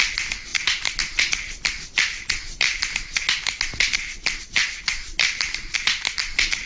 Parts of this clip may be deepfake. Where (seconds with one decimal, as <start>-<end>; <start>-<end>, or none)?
none

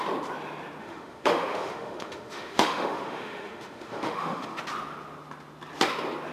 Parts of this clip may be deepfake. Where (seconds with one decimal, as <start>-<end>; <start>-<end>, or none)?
0.8-4.6